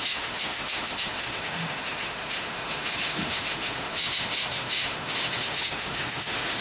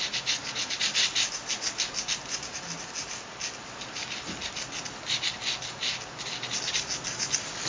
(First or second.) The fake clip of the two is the first